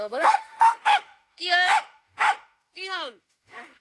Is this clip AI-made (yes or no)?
yes